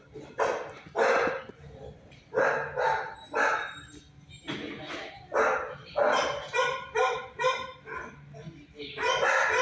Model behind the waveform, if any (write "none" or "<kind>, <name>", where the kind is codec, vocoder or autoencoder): none